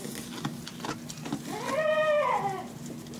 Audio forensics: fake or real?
real